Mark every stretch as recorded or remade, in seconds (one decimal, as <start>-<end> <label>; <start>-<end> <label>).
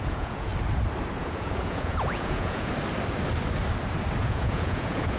0.0-0.5 remade; 0.5-1.2 recorded; 1.2-2.7 remade; 2.7-4.2 recorded; 4.2-5.2 remade